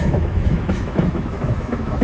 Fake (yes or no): yes